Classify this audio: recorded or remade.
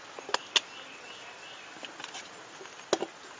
recorded